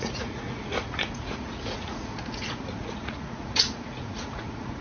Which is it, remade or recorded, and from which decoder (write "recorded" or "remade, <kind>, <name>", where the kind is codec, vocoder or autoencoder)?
remade, vocoder, Vocos